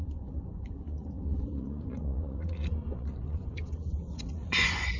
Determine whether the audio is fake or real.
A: fake